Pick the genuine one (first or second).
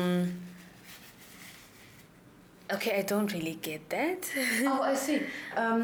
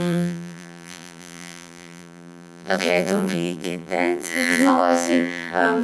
first